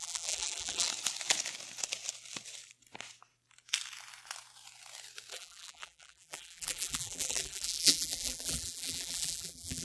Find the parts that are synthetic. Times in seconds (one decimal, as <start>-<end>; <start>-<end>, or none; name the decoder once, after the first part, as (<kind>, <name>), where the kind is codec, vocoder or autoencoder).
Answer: 0.0-0.9 (vocoder, BigVGAN v2); 5.3-9.8